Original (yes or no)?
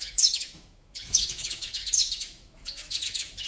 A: no